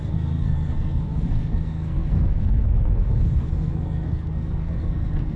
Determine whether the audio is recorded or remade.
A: remade